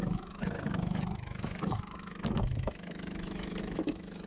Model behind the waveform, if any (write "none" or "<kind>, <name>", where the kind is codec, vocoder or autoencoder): autoencoder, DAC-VAE